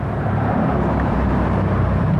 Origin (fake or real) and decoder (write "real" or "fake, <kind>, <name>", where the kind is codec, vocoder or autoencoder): fake, vocoder, BigVGAN v2